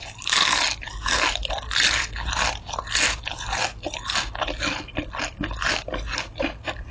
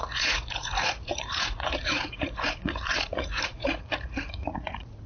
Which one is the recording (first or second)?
first